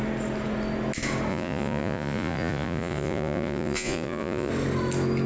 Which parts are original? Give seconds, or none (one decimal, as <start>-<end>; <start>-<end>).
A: 0.0-1.3; 4.5-5.3